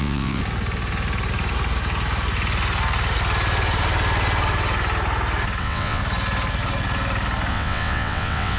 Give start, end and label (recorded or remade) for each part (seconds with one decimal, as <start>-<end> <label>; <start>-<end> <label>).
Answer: 0.0-0.4 remade; 0.4-5.6 recorded; 5.6-6.0 remade; 6.0-7.5 recorded; 7.5-8.6 remade